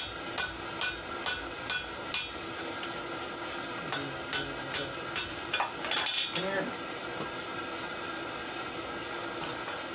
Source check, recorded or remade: recorded